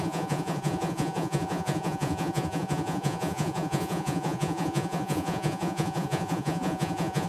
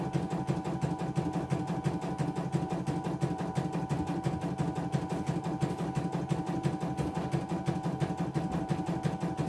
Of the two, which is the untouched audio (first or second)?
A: second